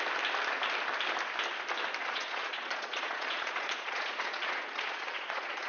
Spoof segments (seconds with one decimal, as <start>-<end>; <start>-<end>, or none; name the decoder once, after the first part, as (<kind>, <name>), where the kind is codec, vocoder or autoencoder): 2.0-5.7 (vocoder, Vocos)